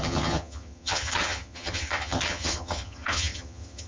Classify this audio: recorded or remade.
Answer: remade